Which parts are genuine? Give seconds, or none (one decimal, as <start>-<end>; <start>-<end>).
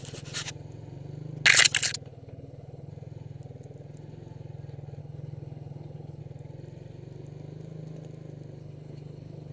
0.0-2.1; 2.9-5.0; 6.2-8.6